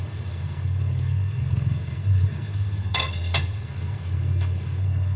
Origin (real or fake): fake